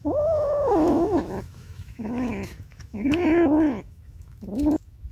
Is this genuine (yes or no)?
no